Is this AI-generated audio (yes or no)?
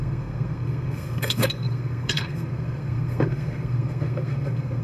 yes